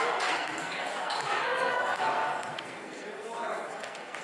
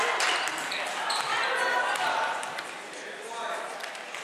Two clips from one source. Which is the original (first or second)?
second